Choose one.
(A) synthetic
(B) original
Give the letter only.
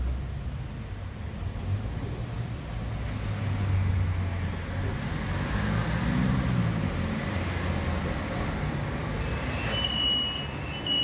B